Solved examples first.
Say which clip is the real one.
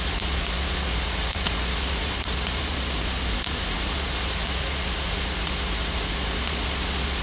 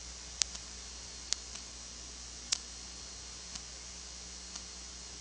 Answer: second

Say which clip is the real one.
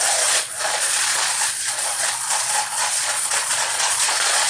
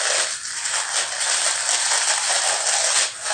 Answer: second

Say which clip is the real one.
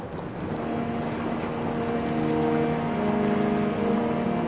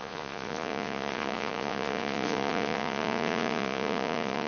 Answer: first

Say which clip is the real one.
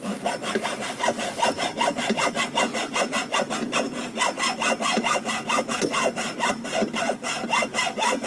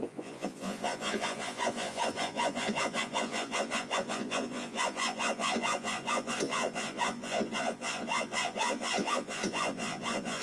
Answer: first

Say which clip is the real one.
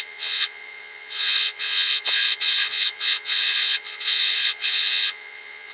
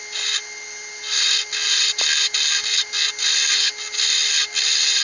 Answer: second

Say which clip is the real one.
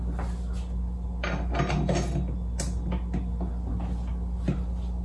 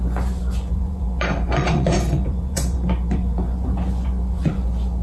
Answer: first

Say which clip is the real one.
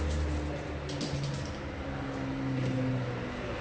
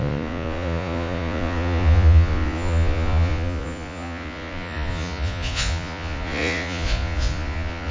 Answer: first